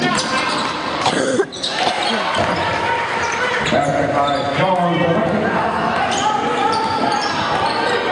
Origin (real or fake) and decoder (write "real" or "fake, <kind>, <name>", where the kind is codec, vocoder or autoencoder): fake, vocoder, BigVGAN v2